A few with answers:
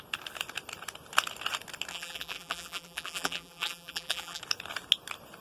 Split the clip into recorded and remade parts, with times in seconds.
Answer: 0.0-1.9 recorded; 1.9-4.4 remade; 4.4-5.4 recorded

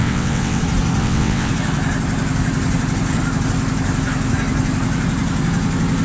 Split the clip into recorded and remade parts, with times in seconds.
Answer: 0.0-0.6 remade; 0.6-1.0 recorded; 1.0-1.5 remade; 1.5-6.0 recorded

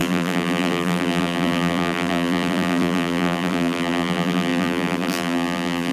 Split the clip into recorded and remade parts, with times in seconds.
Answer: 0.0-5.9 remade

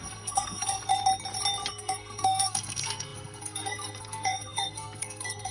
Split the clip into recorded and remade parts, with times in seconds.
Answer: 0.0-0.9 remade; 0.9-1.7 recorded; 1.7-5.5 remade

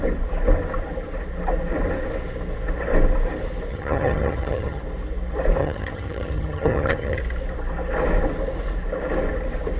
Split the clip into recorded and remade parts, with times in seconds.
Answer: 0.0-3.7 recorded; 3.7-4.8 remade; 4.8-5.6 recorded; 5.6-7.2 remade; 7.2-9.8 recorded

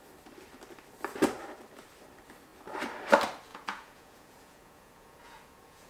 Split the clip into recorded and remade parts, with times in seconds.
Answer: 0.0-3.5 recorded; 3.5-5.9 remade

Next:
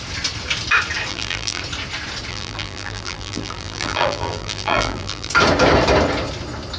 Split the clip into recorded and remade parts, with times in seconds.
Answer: 0.0-1.1 recorded; 1.1-1.6 remade; 1.6-2.3 recorded; 2.3-5.3 remade; 5.3-6.8 recorded